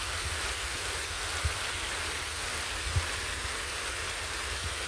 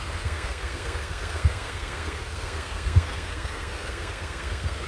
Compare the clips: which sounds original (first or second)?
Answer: first